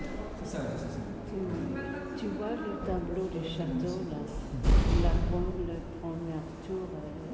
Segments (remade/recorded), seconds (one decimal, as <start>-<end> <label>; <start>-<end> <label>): 0.0-7.3 recorded

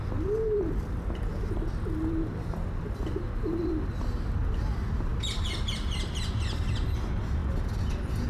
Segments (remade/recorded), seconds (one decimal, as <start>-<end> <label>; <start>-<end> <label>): 0.0-8.3 recorded